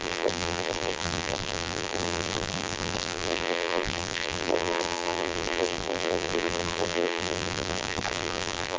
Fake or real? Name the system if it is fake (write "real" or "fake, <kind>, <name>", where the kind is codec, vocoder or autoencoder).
fake, vocoder, BigVGAN v2